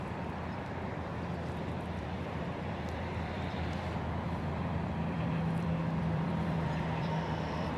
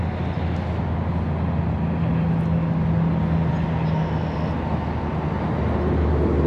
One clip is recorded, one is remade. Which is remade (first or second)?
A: first